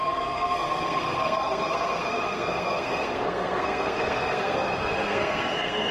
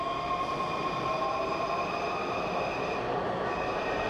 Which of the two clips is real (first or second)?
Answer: second